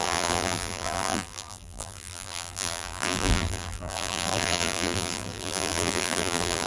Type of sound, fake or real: fake